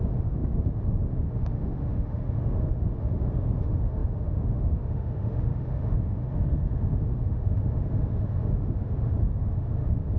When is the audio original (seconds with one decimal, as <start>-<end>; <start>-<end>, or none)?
none